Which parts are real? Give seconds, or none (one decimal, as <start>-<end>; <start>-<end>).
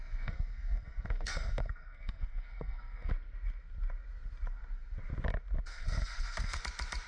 3.1-5.7; 6.6-7.1